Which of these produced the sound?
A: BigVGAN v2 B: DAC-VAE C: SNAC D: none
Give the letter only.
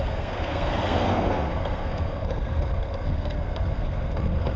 C